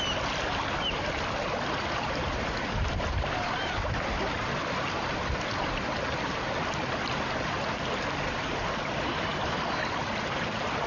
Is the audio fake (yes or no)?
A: no